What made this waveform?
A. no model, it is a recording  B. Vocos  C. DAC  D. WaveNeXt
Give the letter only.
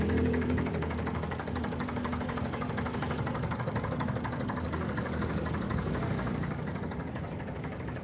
C